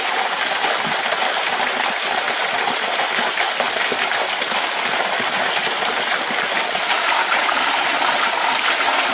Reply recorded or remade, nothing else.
recorded